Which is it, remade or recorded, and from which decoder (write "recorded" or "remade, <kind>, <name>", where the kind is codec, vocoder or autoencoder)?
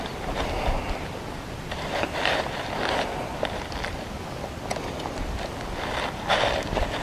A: recorded